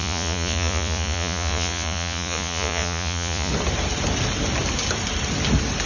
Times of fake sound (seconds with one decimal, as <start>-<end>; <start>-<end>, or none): 0.0-3.5